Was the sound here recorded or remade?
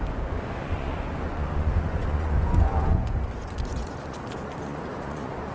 remade